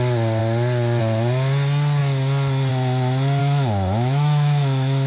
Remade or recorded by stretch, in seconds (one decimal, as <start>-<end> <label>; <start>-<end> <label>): 0.0-3.4 recorded; 3.4-5.1 remade